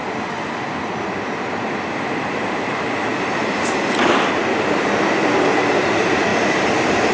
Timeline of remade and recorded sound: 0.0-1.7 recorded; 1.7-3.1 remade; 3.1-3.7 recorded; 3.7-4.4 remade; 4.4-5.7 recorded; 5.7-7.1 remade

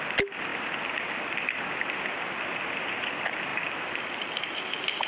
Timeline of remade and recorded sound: 0.0-5.1 recorded

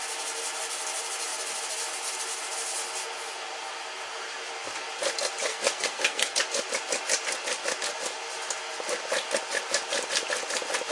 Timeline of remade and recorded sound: 0.0-5.5 recorded; 5.5-6.4 remade; 6.4-10.9 recorded